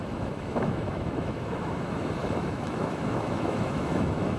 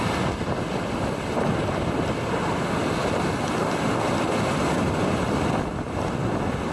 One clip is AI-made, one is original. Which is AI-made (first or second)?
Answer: first